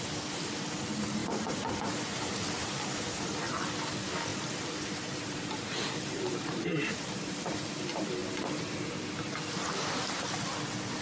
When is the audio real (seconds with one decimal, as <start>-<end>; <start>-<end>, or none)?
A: 0.0-1.2; 1.8-4.3; 7.4-11.0